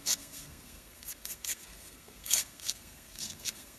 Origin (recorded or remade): remade